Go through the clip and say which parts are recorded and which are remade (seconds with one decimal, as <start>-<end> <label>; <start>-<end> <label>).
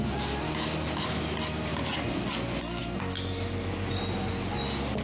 0.0-5.0 recorded